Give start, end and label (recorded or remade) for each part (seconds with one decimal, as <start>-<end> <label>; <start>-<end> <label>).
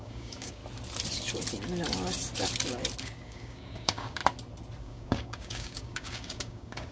0.0-0.6 remade; 0.6-3.0 recorded; 3.0-4.2 remade; 4.2-4.8 recorded; 4.8-6.9 remade